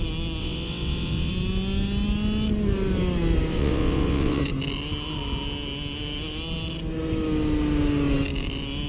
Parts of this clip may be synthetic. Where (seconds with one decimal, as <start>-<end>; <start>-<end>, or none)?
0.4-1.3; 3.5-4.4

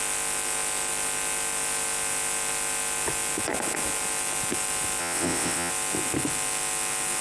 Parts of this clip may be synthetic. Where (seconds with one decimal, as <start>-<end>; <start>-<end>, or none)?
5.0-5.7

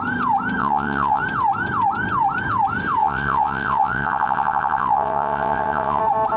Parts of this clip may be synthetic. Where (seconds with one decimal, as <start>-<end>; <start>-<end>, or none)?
0.6-1.2; 3.0-6.0

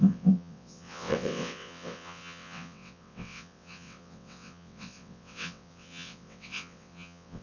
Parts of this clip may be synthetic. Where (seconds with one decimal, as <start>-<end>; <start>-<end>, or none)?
0.0-7.4

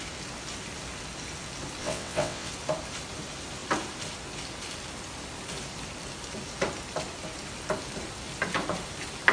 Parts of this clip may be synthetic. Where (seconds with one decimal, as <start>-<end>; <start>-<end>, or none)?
1.8-2.5

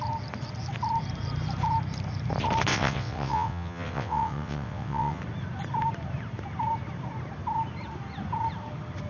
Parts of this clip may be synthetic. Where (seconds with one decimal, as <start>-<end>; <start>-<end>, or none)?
2.7-5.2

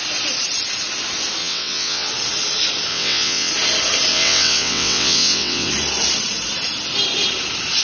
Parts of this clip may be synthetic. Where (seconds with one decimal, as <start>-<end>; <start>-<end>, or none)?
1.4-2.1; 2.9-3.5; 4.1-5.7